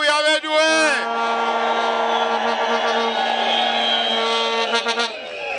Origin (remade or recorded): recorded